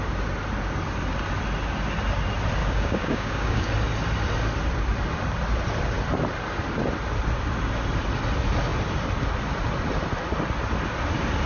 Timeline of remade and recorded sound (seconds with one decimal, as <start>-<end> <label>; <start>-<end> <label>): 0.0-2.6 recorded; 2.6-3.7 remade; 3.7-11.5 recorded